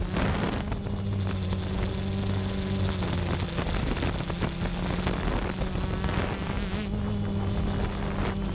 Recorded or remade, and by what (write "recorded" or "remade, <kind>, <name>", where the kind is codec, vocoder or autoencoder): recorded